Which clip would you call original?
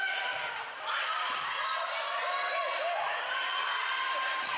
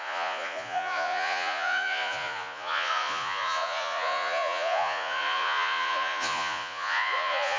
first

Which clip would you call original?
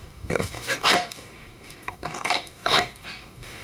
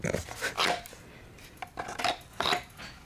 second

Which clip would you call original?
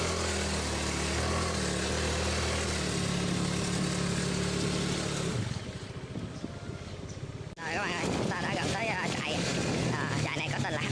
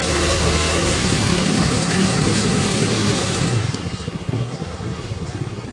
first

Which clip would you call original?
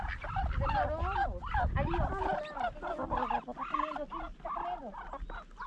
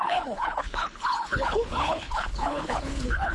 first